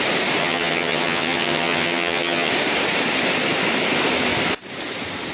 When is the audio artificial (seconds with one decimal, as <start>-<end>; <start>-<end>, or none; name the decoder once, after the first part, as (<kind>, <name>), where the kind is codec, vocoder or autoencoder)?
0.4-2.5 (vocoder, HiFi-GAN)